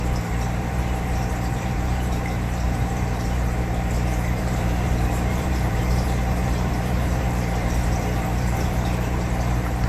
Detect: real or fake fake